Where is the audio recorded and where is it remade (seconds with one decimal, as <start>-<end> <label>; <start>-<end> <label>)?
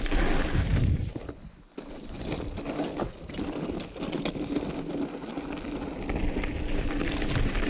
0.0-7.7 recorded